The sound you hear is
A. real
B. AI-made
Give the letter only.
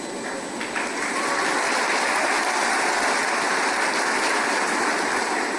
A